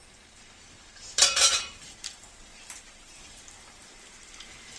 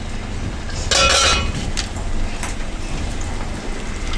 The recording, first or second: second